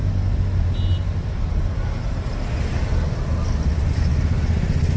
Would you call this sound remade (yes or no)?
no